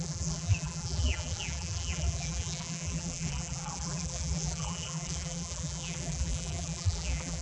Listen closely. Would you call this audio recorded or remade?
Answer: remade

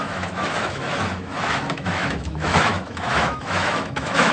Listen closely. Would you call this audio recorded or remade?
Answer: remade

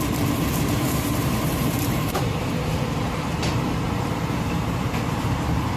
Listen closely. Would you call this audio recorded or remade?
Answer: remade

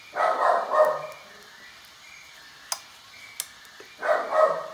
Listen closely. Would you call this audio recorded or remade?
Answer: recorded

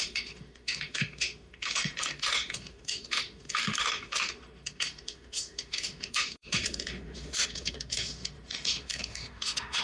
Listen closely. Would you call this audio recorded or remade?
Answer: remade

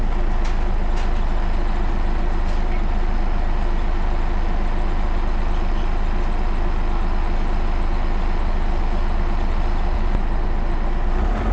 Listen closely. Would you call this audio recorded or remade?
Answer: recorded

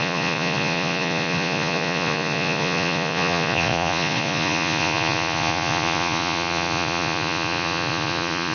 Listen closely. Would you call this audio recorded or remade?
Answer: remade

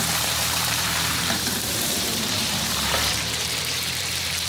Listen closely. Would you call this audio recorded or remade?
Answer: remade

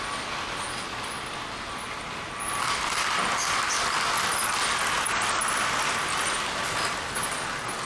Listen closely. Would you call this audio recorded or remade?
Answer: recorded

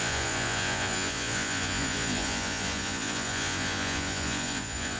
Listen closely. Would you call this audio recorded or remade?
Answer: remade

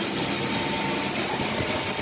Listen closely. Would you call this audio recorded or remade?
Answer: recorded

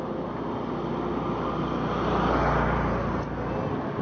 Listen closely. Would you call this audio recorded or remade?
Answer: recorded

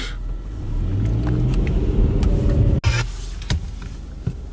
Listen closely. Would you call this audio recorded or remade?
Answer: recorded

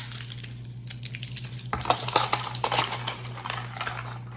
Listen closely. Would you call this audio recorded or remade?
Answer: recorded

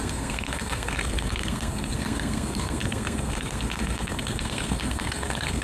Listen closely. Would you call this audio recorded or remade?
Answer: remade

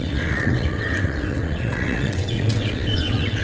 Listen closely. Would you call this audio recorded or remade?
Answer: remade